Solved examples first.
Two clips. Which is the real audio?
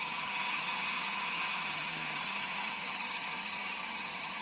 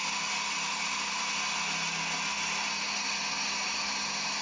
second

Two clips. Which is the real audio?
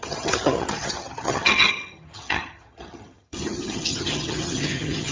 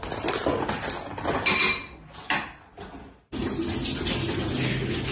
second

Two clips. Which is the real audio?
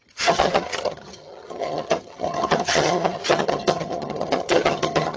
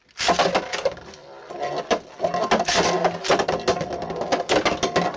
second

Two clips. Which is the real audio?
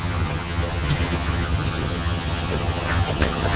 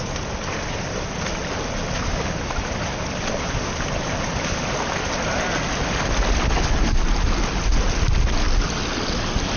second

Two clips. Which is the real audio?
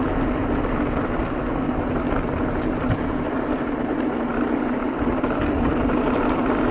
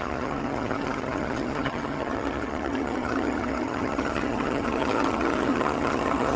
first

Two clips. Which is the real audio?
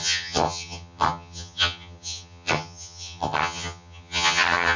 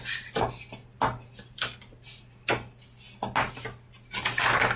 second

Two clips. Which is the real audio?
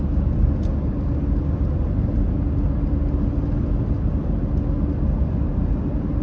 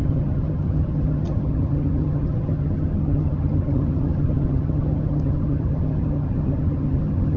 first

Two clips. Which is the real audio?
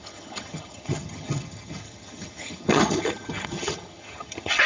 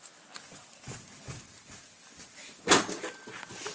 second